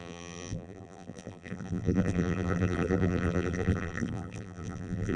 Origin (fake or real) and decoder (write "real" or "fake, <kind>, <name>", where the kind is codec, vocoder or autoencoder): fake, vocoder, BigVGAN v2